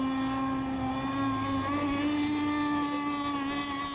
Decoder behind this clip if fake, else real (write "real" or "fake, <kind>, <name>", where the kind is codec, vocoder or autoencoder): real